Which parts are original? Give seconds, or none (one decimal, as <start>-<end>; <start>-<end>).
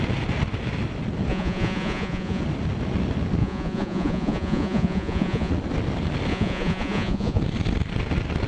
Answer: 0.0-1.3; 2.4-3.4; 5.5-6.3; 7.4-8.5